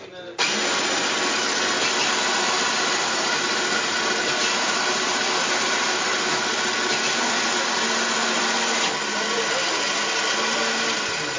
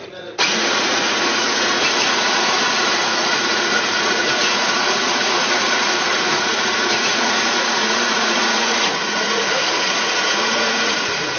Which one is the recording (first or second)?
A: first